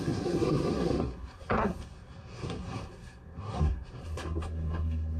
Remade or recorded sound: remade